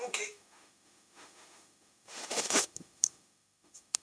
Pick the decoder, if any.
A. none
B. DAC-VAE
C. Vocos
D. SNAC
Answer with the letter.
B